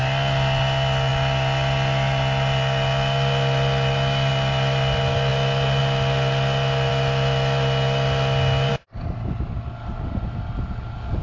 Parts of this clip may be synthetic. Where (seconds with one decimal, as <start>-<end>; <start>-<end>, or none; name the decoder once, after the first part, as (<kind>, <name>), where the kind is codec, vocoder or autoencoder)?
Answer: none